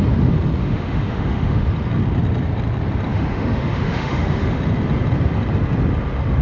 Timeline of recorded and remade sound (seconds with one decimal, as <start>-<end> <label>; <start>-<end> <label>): 0.0-0.6 recorded; 0.6-1.6 remade; 1.6-3.1 recorded; 3.1-4.6 remade; 4.6-6.4 recorded